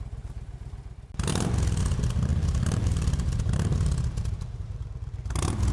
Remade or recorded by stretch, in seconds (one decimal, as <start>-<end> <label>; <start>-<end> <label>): 0.0-2.3 recorded; 2.3-4.9 remade; 4.9-5.7 recorded